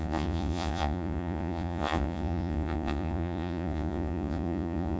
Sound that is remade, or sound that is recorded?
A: remade